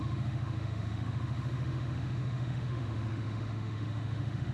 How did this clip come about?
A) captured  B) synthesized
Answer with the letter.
B